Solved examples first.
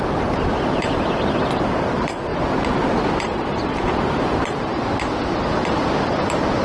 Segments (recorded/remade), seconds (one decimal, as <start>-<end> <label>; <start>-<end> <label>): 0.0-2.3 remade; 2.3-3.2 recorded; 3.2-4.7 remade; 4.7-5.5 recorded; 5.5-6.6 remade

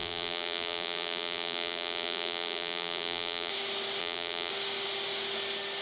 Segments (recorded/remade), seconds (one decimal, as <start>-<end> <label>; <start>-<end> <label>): 0.0-3.5 remade; 3.5-4.0 recorded; 4.0-4.5 remade; 4.5-5.8 recorded

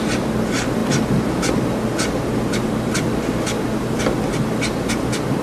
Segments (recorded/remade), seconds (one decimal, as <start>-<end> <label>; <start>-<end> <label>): 0.0-5.4 recorded